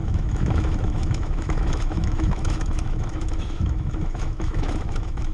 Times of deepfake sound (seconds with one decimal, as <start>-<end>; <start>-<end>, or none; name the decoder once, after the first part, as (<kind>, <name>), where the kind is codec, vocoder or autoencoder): 0.0-5.3 (autoencoder, DAC-VAE)